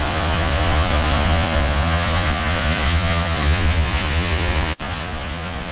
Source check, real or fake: fake